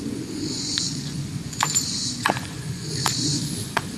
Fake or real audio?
fake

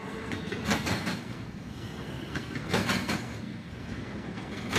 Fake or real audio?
fake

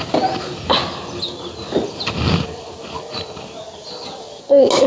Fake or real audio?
real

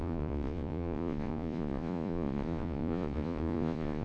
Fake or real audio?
fake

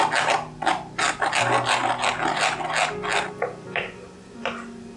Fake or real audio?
real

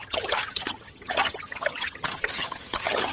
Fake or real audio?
fake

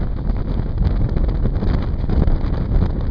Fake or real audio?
real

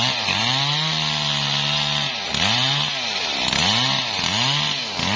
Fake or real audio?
real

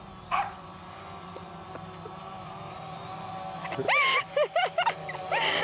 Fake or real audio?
real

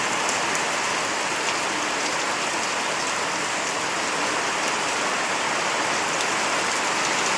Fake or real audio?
real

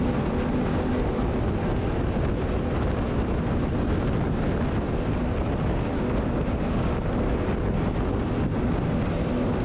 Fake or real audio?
real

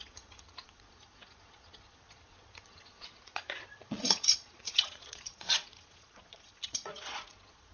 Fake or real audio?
fake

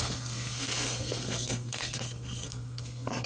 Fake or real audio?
fake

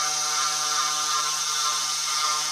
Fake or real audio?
real